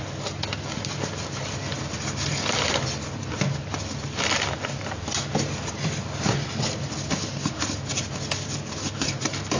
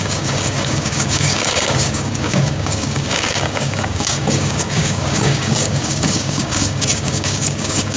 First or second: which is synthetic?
second